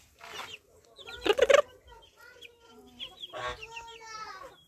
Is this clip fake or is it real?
real